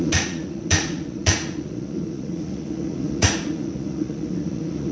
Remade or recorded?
remade